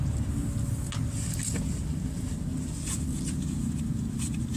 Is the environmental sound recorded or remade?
recorded